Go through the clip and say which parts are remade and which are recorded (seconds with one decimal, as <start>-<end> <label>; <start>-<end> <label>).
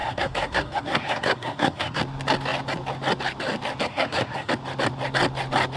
0.0-2.0 remade; 2.0-3.8 recorded; 3.8-4.5 remade; 4.5-5.8 recorded